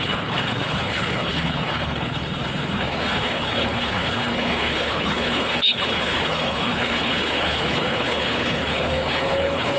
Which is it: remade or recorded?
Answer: remade